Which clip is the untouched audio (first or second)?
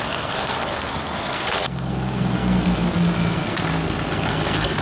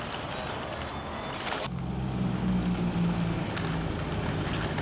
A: second